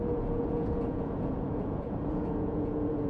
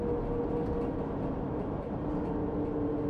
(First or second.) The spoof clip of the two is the first